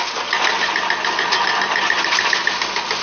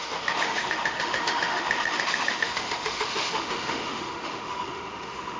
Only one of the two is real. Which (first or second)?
first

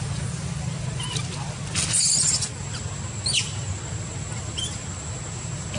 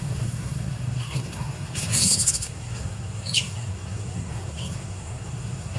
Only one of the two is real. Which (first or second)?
first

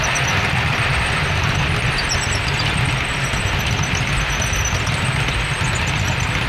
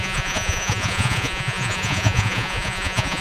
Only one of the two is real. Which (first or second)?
first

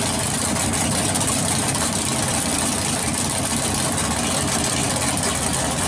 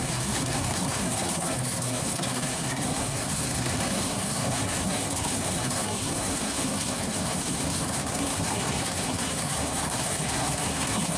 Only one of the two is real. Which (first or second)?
first